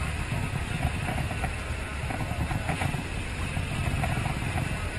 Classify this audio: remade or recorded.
recorded